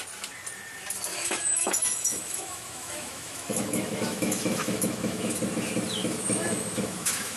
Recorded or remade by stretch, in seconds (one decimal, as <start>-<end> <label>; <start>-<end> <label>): 0.0-1.1 recorded; 1.1-5.4 remade; 5.4-6.0 recorded; 6.0-7.4 remade